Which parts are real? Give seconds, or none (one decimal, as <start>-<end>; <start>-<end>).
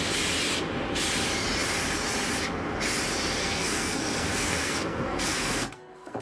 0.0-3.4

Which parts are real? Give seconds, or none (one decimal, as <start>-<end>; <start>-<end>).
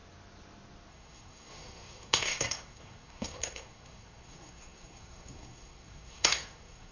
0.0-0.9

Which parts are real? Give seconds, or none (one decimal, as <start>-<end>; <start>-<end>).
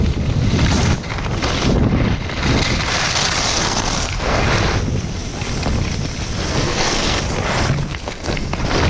0.0-3.5; 4.5-6.5; 7.2-7.9; 8.5-8.9